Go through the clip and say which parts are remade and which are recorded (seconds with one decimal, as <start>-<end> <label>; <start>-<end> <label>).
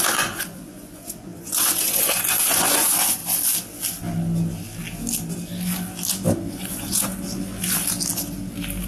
0.0-3.2 remade; 3.2-6.5 recorded; 6.5-7.1 remade; 7.1-8.9 recorded